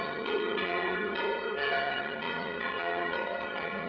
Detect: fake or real fake